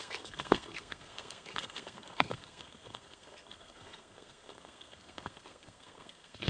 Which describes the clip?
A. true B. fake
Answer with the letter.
B